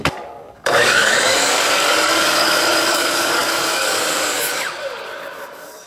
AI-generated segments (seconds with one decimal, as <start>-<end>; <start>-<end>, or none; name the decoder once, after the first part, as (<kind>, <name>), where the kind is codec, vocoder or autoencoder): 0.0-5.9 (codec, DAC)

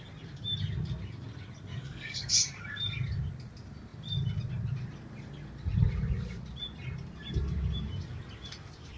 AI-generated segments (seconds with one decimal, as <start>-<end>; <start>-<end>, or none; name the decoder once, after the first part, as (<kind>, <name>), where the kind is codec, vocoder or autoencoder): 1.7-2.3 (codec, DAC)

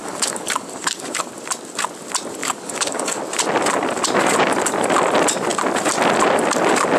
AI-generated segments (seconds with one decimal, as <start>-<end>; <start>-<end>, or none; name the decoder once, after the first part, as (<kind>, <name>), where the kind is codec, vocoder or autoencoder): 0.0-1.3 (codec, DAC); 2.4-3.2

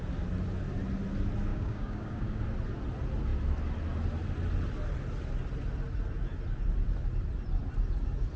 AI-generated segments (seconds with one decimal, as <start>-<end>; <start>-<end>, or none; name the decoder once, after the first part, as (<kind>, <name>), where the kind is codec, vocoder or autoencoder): 1.5-2.4 (codec, DAC)

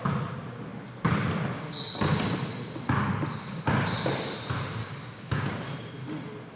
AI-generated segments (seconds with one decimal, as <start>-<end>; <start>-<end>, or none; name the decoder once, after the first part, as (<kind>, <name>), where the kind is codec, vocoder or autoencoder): 4.8-5.5 (codec, DAC)